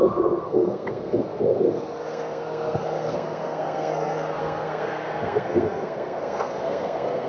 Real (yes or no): no